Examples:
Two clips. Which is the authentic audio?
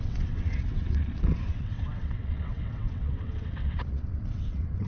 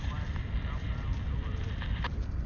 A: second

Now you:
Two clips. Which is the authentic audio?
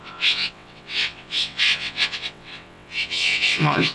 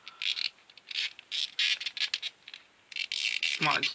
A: second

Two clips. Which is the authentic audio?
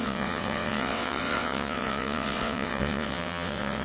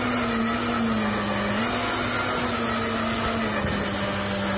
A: second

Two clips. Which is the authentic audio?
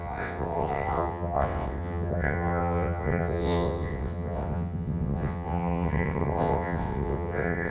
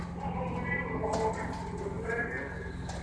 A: second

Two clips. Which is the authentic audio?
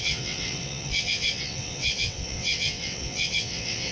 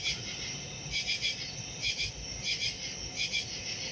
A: second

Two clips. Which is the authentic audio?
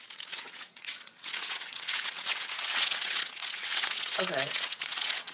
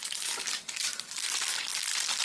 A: second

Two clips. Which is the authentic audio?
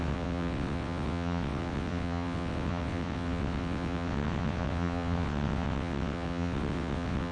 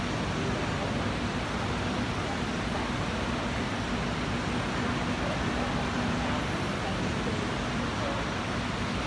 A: second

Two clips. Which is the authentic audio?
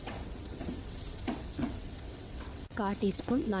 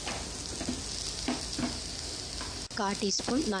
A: second